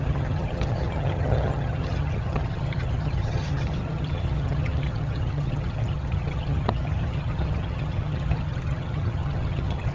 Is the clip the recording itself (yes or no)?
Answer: no